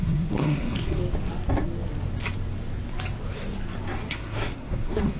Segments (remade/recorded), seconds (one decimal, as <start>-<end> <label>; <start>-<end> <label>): 0.0-1.0 remade; 1.0-4.1 recorded; 4.1-5.2 remade